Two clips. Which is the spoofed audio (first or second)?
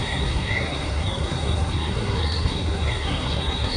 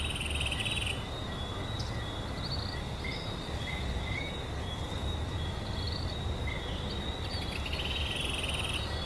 first